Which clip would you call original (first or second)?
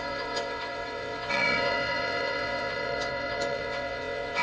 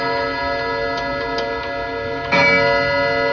second